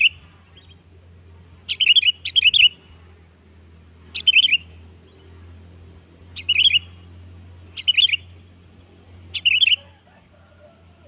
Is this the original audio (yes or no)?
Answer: yes